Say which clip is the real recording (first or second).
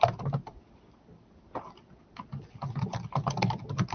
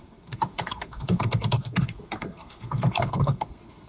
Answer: first